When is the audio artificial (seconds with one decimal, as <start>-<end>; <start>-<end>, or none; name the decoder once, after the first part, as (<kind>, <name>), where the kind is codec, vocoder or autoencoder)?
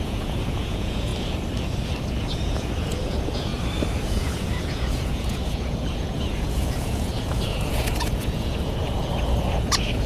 0.0-1.1 (vocoder, Vocos); 2.2-3.5; 4.1-10.1